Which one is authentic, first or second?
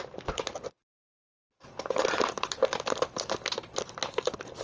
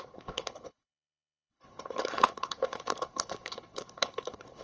first